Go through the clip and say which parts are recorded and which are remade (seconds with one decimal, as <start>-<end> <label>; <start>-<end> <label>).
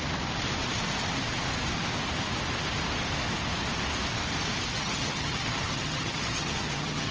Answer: 0.0-4.7 recorded; 4.7-7.1 remade